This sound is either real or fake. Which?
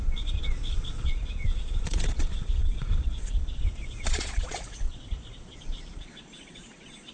fake